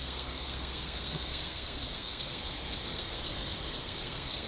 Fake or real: fake